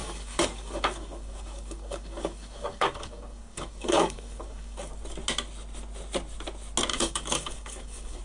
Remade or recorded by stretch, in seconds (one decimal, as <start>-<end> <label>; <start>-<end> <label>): 0.0-4.9 remade; 4.9-6.9 recorded; 6.9-8.2 remade

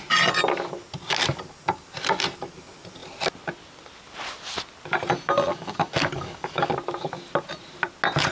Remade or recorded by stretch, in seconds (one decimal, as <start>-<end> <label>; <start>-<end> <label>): 0.0-5.5 recorded; 5.5-6.7 remade; 6.7-8.3 recorded

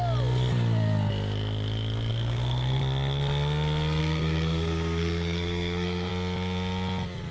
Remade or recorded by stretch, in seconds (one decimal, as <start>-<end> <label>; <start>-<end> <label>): 0.0-2.1 recorded; 2.1-2.8 remade; 2.8-4.0 recorded; 4.0-6.1 remade; 6.1-7.3 recorded

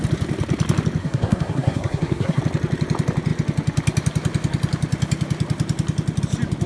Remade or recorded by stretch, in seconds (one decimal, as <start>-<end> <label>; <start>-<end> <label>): 0.0-1.0 recorded; 1.0-2.4 remade; 2.4-6.7 recorded

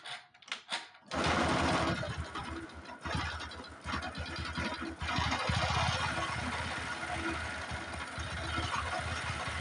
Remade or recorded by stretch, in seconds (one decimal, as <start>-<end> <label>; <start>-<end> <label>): 0.0-9.6 recorded

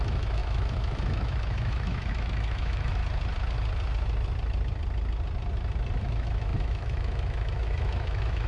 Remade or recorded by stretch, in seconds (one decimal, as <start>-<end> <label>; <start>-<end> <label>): 0.0-3.0 remade; 3.0-6.0 recorded; 6.0-8.5 remade

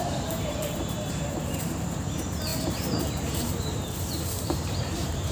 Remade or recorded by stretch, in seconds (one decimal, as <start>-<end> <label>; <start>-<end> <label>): 0.0-2.5 remade; 2.5-3.0 recorded; 3.0-5.3 remade